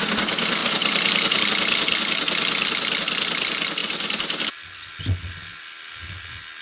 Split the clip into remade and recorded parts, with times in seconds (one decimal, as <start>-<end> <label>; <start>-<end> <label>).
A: 0.0-6.6 recorded